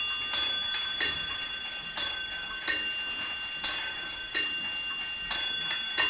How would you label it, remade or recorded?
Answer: recorded